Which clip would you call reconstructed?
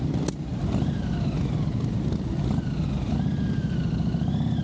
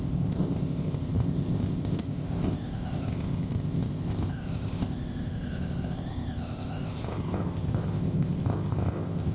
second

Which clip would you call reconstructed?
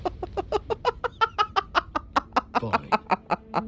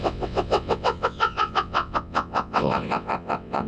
second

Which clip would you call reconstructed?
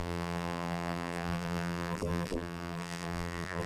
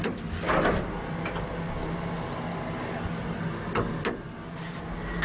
first